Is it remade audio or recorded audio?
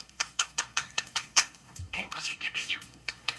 remade